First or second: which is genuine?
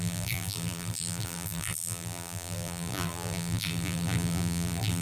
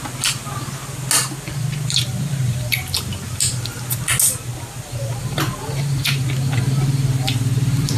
second